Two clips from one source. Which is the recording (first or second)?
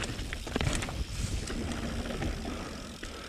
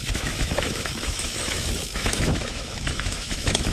first